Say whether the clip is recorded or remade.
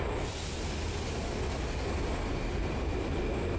recorded